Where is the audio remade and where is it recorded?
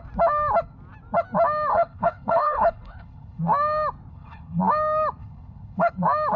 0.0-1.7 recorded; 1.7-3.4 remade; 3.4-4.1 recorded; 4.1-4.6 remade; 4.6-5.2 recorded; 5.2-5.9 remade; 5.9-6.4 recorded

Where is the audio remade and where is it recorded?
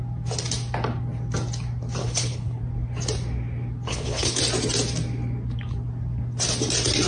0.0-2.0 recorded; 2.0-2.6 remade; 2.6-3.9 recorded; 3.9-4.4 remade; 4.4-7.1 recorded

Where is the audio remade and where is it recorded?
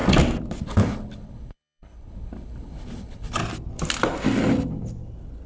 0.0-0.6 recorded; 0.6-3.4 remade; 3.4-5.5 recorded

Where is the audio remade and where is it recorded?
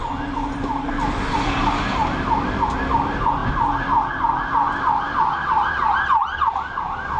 0.0-7.2 recorded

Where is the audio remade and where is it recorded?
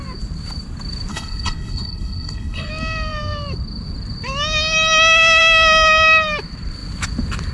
0.0-1.1 recorded; 1.1-2.7 remade; 2.7-7.5 recorded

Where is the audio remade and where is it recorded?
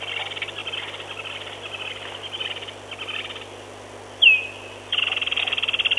0.0-6.0 recorded